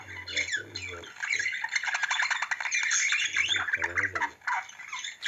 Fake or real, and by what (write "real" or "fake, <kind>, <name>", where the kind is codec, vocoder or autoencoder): real